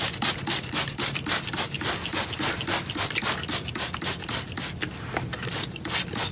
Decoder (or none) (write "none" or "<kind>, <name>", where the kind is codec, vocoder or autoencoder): none